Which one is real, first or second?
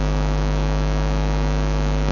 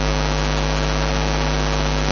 second